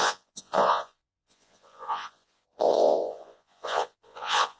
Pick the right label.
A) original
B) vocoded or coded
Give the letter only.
B